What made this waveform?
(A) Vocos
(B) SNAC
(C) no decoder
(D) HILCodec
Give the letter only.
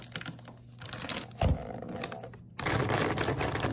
C